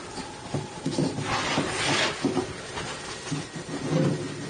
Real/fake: real